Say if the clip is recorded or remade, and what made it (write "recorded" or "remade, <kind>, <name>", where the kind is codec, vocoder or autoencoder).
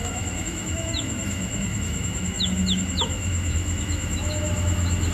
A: remade, autoencoder, DAC-VAE